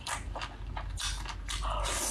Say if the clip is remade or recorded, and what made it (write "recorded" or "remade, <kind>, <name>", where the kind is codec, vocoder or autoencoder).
recorded